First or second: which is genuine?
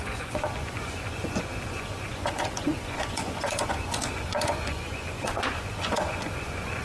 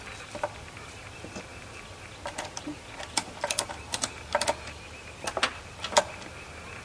second